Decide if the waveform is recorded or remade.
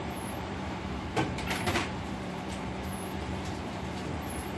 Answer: remade